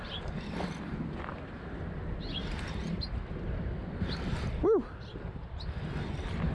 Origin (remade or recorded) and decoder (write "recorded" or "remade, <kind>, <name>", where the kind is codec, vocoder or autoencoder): recorded